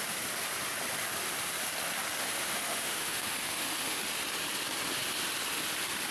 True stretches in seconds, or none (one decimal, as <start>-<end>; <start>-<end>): 0.0-2.2; 4.0-6.1